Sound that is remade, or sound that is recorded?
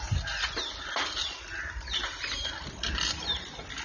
recorded